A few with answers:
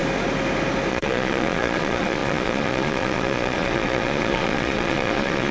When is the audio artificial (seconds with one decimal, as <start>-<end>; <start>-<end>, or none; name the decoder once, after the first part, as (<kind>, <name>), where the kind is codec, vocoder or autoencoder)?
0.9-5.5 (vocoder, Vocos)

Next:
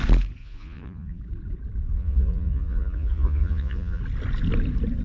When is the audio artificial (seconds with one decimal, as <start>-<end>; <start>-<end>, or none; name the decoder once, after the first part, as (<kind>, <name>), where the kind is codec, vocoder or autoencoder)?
0.4-1.2 (vocoder, Vocos); 1.9-4.0

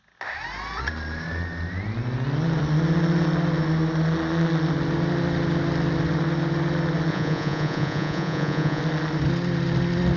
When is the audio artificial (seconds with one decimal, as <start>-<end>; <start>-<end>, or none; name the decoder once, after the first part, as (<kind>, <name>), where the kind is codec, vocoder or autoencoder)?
7.1-8.8 (vocoder, Vocos)

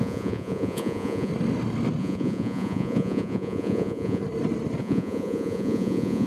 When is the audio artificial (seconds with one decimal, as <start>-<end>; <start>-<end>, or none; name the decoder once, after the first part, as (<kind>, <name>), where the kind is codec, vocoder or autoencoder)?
0.0-1.3 (vocoder, Vocos); 2.0-4.2; 4.8-6.3

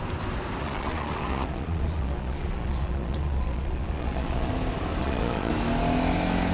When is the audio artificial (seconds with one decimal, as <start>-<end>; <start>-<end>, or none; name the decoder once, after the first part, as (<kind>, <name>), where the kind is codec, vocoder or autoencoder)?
0.6-4.5 (vocoder, Vocos); 5.0-5.5

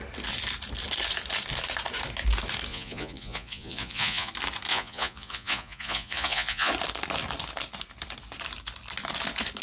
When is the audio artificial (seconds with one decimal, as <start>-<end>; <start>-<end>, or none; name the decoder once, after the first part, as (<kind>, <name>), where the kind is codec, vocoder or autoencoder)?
2.7-4.3 (vocoder, Vocos); 4.7-6.7